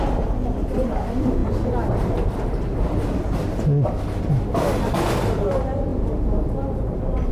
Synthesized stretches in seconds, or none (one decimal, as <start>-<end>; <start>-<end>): none